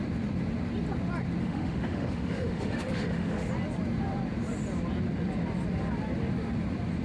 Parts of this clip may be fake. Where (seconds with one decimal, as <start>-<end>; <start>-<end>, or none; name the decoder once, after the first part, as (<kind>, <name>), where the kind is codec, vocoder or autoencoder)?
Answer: 1.4-3.5 (autoencoder, DAC-VAE)

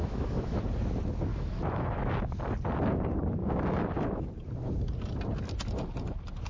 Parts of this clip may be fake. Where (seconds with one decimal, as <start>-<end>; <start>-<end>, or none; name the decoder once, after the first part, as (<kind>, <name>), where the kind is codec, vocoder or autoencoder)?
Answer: 0.0-0.6 (autoencoder, DAC-VAE); 1.3-2.4; 3.4-4.3